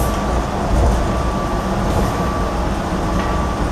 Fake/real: real